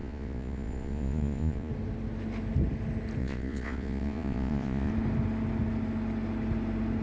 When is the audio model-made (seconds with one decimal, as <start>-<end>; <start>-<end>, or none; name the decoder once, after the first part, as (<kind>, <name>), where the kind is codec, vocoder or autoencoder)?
0.0-1.7 (vocoder, Vocos); 3.2-4.9